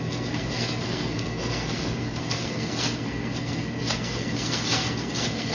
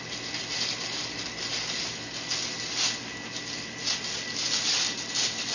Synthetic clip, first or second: first